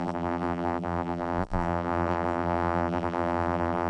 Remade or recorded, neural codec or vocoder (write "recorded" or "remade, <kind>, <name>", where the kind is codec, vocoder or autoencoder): remade, vocoder, BigVGAN v2